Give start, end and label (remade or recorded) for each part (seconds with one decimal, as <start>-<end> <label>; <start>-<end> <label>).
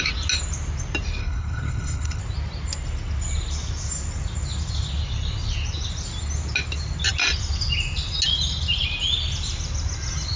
0.0-1.2 recorded; 1.2-2.2 remade; 2.2-10.4 recorded